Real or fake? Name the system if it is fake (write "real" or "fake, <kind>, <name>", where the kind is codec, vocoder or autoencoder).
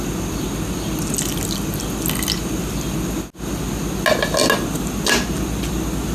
real